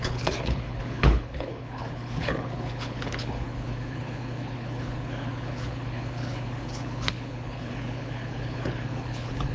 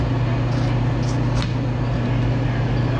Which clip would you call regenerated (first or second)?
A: first